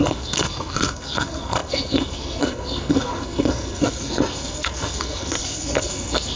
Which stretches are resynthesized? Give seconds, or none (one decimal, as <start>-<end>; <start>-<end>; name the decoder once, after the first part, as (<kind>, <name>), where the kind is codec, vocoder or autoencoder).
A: 0.0-6.4 (codec, SNAC)